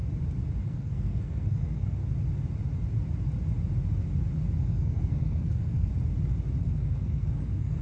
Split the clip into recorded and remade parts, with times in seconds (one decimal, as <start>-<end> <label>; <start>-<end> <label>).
0.0-0.6 recorded; 0.6-2.0 remade; 2.0-4.6 recorded; 4.6-5.9 remade; 5.9-6.6 recorded; 6.6-7.8 remade